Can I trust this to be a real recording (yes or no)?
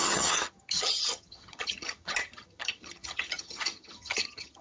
no